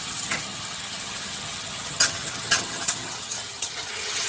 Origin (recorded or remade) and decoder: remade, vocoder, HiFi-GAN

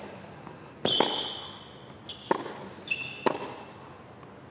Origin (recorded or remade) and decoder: recorded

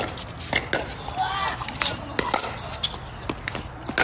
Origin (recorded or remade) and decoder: recorded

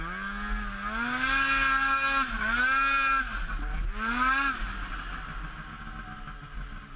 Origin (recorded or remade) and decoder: recorded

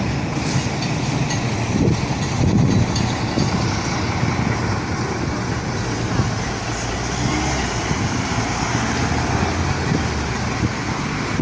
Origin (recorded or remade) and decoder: recorded